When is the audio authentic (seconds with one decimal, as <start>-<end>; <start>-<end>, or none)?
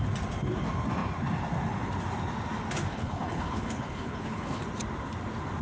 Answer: 0.0-2.9; 4.6-5.6